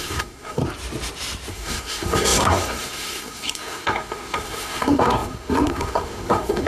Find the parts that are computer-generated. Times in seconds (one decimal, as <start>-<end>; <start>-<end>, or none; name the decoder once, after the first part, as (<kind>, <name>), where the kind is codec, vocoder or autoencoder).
0.0-0.6 (codec, SNAC); 1.5-6.7